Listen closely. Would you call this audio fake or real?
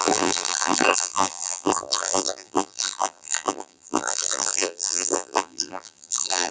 fake